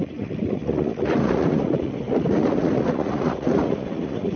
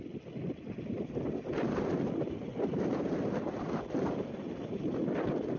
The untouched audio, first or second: second